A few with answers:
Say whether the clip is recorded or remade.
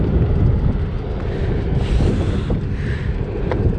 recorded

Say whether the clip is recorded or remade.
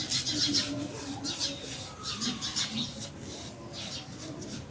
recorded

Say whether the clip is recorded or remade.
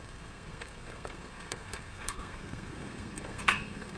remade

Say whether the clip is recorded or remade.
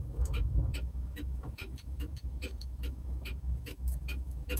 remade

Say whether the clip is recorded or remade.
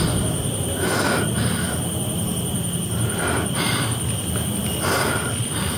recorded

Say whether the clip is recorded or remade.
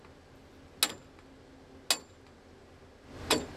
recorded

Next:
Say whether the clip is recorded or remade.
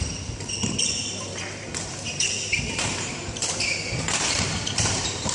remade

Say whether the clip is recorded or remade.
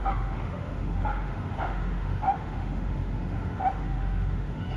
remade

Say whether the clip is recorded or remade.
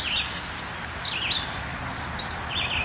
recorded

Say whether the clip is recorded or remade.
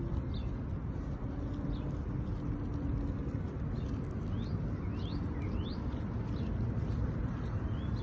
recorded